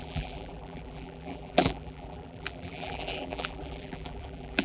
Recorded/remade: remade